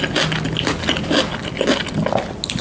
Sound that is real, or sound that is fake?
real